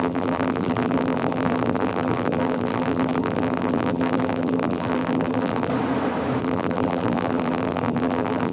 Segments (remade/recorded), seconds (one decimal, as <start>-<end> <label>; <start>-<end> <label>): 0.0-5.7 remade; 5.7-6.4 recorded; 6.4-8.5 remade